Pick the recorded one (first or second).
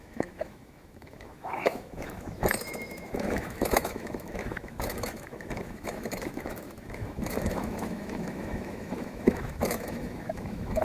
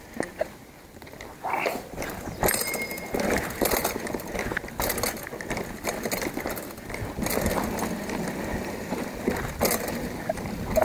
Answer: second